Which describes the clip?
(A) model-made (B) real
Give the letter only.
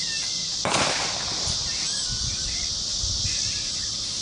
A